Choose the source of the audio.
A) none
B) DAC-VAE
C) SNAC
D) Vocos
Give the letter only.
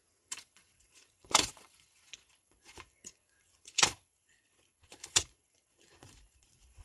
D